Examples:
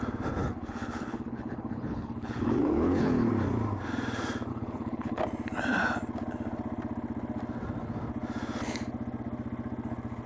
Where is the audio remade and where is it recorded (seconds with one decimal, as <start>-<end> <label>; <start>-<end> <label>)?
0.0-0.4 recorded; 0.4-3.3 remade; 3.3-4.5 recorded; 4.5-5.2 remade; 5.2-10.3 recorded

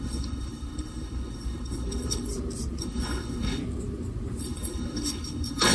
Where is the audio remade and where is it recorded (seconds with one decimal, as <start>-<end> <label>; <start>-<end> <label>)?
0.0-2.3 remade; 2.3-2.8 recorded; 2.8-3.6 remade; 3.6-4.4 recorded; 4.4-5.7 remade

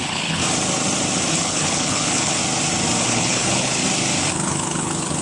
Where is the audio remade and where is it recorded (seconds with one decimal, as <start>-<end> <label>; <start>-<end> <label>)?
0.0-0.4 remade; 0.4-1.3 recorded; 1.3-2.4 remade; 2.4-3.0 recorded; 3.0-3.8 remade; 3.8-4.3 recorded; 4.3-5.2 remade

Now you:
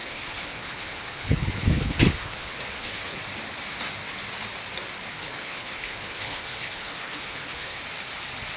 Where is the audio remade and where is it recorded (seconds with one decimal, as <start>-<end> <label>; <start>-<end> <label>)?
0.0-3.2 remade; 3.2-5.2 recorded; 5.2-7.8 remade; 7.8-8.6 recorded

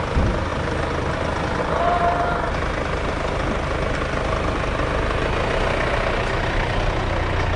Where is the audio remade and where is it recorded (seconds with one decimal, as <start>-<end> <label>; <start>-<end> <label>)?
0.0-7.6 recorded